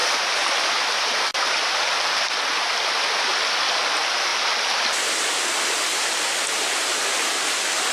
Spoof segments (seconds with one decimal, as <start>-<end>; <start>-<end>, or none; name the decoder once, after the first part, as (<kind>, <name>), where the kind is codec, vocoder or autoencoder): 0.0-0.7 (vocoder, BigVGAN v2)